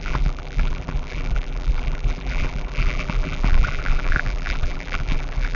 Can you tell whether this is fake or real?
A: fake